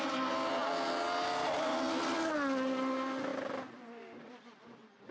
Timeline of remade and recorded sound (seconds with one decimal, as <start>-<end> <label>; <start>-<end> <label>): 0.0-5.1 recorded